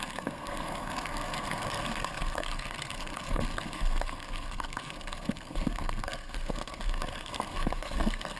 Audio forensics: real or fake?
fake